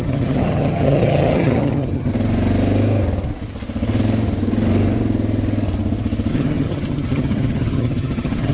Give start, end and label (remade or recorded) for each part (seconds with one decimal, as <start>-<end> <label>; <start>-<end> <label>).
0.0-2.1 remade; 2.1-6.3 recorded; 6.3-8.5 remade